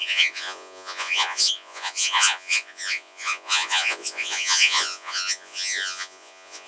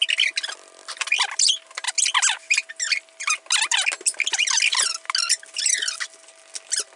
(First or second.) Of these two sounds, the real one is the second